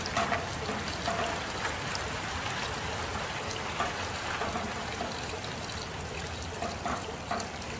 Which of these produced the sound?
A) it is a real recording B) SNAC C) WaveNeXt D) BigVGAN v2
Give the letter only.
A